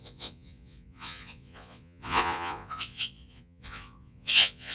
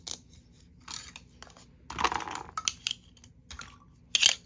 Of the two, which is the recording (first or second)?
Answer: second